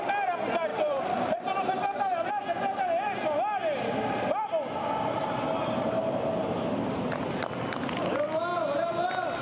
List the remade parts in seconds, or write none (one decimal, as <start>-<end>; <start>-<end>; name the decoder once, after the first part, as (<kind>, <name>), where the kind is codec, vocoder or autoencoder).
0.7-2.3 (vocoder, BigVGAN v2)